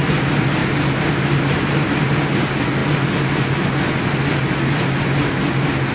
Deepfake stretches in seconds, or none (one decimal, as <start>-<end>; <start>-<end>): 0.6-2.0